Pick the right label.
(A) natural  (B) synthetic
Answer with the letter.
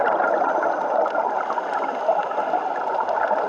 A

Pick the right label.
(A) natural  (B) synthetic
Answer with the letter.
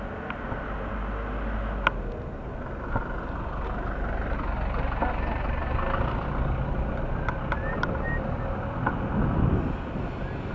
A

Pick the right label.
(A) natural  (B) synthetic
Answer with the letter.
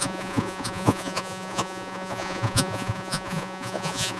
B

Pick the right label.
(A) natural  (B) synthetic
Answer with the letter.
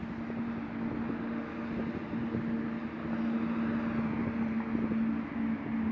A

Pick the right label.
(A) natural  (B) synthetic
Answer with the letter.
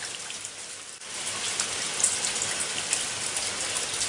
A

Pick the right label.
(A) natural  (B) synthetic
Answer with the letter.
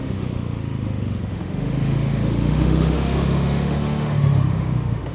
B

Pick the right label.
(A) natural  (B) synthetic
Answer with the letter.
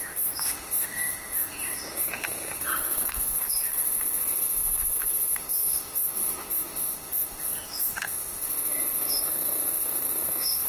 B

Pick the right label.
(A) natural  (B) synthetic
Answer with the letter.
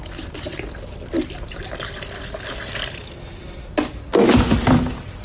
A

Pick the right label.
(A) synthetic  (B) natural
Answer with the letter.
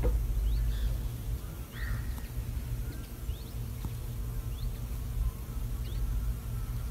B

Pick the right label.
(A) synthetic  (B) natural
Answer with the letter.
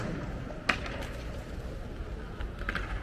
B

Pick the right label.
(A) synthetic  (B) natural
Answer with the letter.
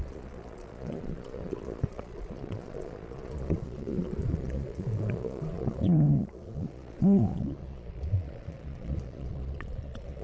A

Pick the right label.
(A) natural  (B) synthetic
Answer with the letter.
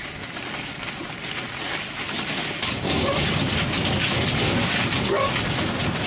A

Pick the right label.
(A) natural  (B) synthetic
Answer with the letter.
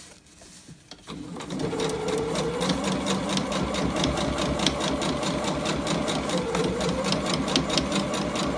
A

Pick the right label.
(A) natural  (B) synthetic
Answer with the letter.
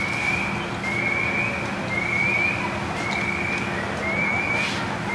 A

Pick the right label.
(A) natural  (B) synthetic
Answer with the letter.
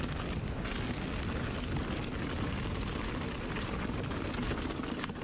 A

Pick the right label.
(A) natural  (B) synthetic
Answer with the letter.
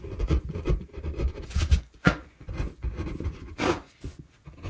B